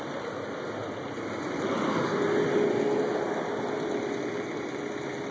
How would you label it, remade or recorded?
recorded